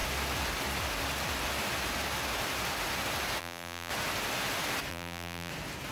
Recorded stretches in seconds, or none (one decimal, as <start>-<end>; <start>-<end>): 0.0-3.4; 3.9-4.9; 5.5-5.9